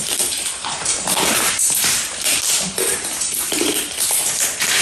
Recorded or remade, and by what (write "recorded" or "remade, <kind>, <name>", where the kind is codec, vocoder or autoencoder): remade, vocoder, BigVGAN v2